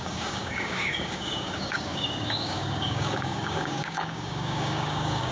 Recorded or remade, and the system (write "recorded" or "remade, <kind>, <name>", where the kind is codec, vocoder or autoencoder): remade, codec, DAC